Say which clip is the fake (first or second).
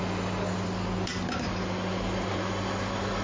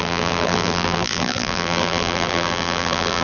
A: second